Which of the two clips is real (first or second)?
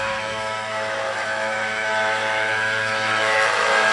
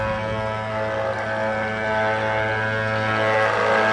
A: second